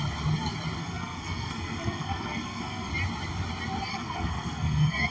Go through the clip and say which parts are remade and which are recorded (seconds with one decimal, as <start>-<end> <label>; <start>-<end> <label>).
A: 0.0-0.8 recorded; 0.8-2.9 remade; 2.9-3.9 recorded; 3.9-5.1 remade